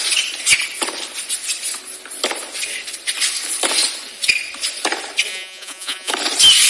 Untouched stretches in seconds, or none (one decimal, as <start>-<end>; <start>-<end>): 0.0-5.3; 6.1-6.7